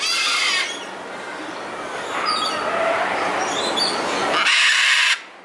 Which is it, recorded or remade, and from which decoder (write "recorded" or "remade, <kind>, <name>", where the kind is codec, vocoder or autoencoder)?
recorded